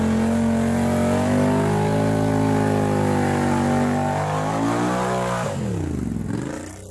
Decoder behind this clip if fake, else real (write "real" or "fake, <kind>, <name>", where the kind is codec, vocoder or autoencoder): real